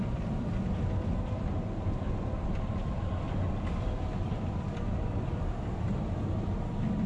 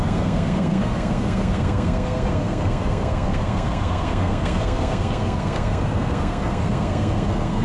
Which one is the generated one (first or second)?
second